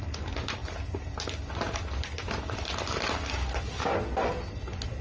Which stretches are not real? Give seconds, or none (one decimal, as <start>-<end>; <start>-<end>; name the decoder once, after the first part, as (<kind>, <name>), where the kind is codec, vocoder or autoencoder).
none